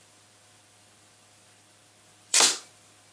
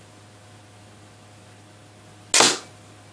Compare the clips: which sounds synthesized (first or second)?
first